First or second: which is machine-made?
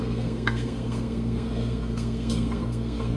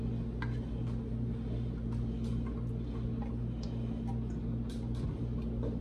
first